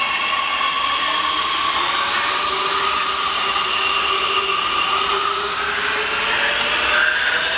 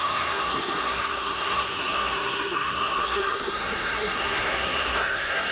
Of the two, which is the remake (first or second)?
second